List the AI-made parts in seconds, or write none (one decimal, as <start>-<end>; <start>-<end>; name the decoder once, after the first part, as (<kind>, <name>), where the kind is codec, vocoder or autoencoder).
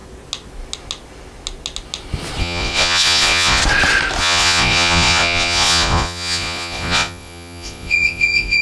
2.4-3.6 (vocoder, Vocos); 4.2-8.6